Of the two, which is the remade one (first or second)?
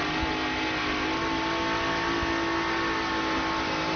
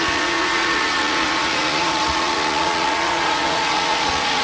second